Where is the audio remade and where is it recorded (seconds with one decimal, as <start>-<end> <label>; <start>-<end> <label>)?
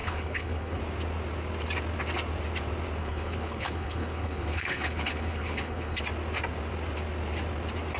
0.0-0.8 remade; 0.8-3.0 recorded; 3.0-6.0 remade; 6.0-8.0 recorded